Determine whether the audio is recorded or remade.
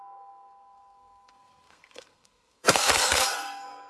remade